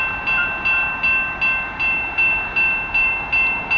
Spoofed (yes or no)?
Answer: no